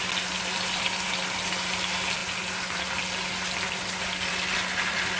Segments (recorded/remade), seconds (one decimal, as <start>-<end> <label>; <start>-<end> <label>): 0.0-5.2 recorded